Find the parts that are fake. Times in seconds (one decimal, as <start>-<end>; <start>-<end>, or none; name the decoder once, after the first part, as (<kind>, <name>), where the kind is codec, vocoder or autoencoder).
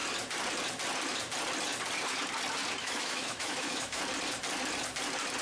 2.8-4.0 (autoencoder, DAC-VAE)